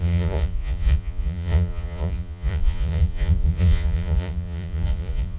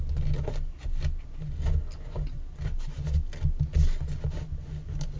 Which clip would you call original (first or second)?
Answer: second